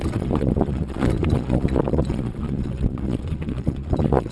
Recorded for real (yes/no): no